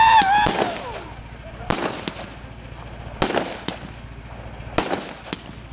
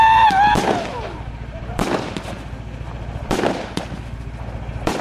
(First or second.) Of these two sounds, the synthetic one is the second